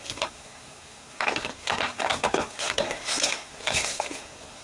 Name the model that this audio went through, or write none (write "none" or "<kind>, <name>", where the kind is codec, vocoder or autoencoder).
codec, SNAC